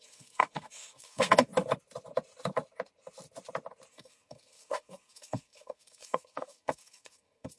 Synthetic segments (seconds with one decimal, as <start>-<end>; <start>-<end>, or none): 0.0-1.5; 3.9-7.6